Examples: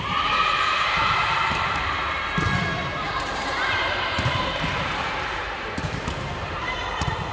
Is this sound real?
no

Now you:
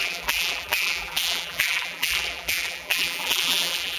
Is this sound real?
no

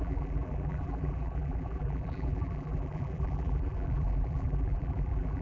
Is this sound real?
no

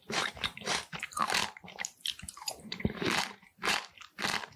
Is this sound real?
no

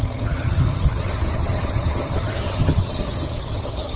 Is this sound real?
no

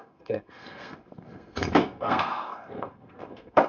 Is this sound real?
no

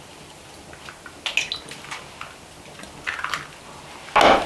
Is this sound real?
yes